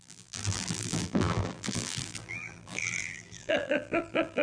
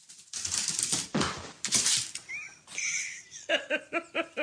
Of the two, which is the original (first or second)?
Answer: second